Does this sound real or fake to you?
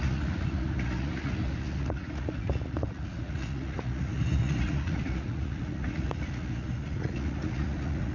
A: fake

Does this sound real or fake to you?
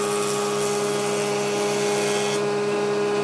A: real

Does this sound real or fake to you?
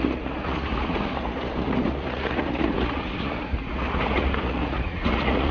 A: fake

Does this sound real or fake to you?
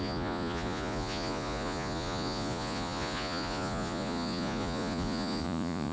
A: fake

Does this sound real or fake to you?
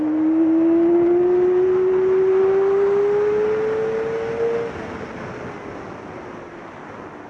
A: real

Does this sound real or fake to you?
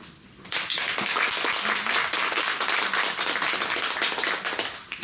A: real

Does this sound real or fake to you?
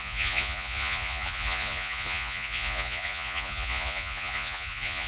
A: fake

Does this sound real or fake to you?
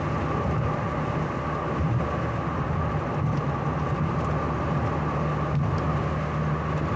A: real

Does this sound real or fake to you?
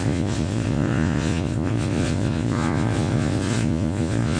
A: fake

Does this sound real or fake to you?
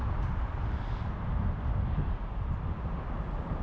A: real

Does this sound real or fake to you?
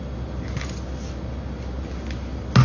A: real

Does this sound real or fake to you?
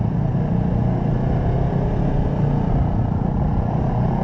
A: real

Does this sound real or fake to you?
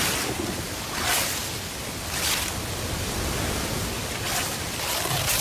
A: real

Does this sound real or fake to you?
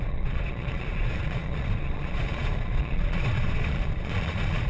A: fake